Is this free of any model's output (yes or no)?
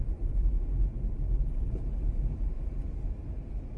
yes